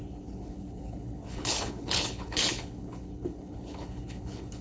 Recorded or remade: remade